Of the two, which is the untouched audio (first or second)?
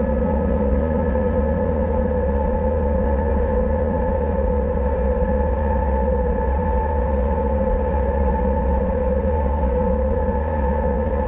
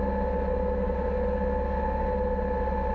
second